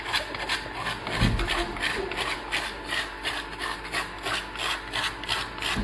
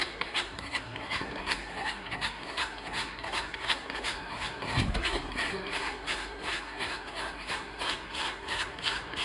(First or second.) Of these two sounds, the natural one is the first